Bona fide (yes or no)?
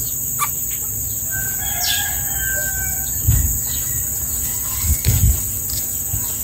yes